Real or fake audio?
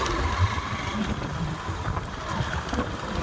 real